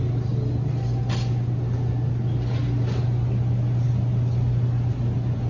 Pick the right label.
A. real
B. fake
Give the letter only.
A